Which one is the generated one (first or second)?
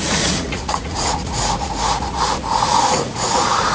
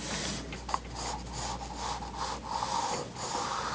first